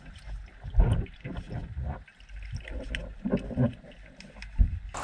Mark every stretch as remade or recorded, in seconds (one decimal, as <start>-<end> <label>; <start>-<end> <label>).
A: 0.0-5.0 recorded